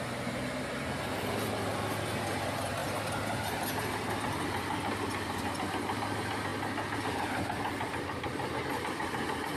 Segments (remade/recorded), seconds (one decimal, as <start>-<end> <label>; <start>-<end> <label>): 0.0-9.6 recorded